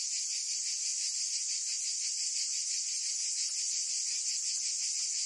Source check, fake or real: real